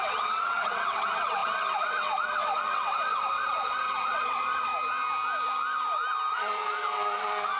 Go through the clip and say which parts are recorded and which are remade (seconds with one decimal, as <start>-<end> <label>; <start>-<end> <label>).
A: 0.0-4.7 remade; 4.7-6.3 recorded; 6.3-7.6 remade

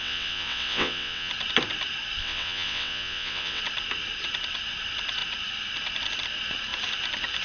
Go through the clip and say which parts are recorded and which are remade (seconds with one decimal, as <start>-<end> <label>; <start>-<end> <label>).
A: 0.0-1.3 remade; 1.3-2.2 recorded; 2.2-3.6 remade; 3.6-7.4 recorded

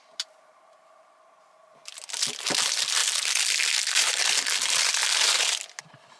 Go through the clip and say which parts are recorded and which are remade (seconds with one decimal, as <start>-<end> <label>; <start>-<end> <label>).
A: 0.0-6.2 recorded

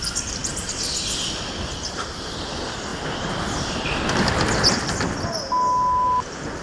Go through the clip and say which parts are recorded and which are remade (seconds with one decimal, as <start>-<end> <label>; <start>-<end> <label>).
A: 0.0-6.6 recorded